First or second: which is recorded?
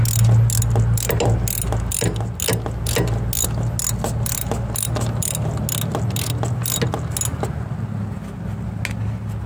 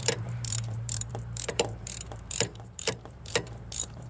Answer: first